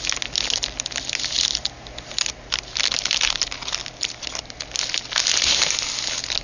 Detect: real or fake real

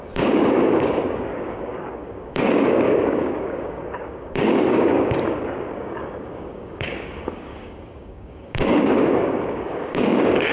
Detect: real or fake fake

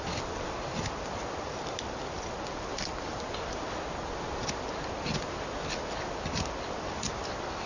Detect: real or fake real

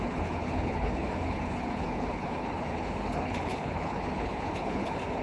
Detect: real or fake fake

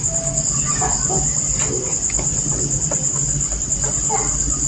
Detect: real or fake real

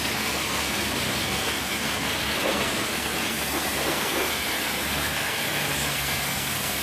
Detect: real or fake fake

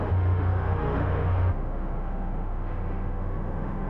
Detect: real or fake fake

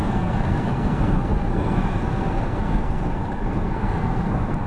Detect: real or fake fake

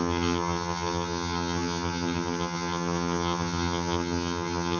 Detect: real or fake fake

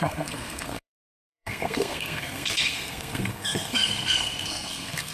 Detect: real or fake fake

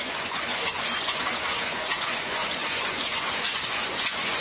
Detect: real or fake fake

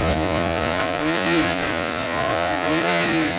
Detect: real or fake fake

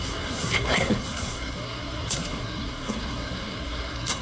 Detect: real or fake fake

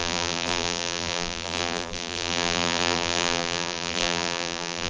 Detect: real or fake fake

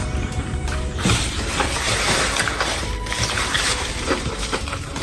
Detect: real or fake fake